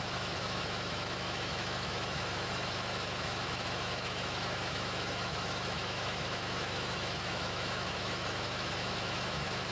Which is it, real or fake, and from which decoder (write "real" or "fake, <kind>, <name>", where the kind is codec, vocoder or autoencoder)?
fake, autoencoder, DAC-VAE